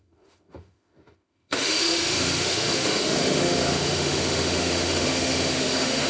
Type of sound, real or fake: fake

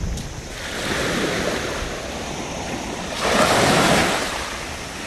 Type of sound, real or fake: fake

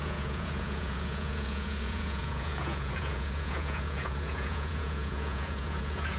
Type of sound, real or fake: fake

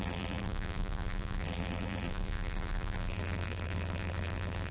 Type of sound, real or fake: fake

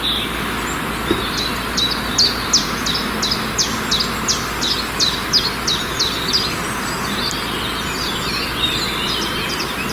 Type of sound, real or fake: real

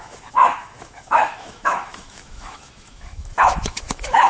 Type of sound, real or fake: fake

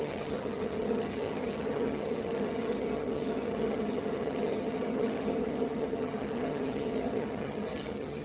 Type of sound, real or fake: fake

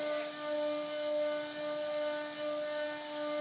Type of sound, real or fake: real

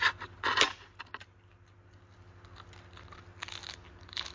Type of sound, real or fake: real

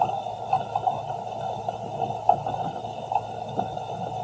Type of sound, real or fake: real